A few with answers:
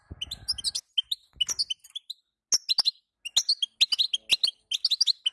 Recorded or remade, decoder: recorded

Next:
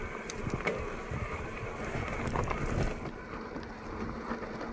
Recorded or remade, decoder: recorded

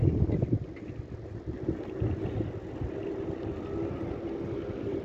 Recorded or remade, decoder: recorded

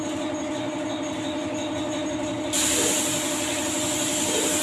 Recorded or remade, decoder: recorded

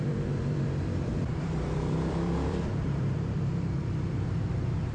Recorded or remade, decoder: remade, vocoder, BigVGAN v2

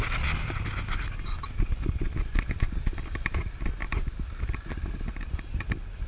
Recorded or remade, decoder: recorded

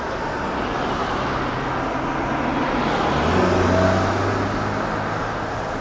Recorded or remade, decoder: recorded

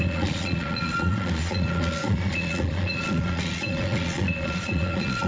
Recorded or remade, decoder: remade, vocoder, Vocos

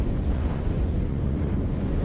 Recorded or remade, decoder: remade, vocoder, Vocos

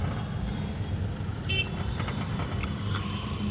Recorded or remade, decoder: recorded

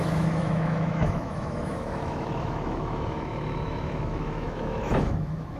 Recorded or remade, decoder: remade, autoencoder, DAC-VAE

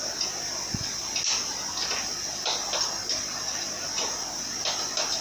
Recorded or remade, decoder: recorded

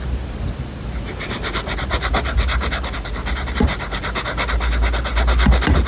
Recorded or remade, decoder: recorded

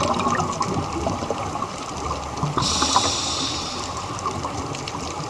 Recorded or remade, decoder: recorded